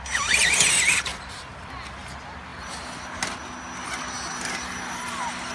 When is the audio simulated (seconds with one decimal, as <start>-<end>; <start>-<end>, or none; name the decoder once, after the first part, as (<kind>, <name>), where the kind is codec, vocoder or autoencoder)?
1.1-1.6 (vocoder, BigVGAN v2)